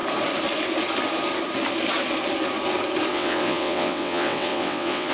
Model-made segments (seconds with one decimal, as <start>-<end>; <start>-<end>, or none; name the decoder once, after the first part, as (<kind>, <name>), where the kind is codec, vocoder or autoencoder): 3.1-5.1 (vocoder, WaveNeXt)